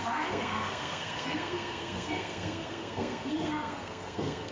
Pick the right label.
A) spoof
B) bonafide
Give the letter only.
A